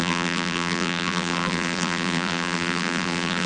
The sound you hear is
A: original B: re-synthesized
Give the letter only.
B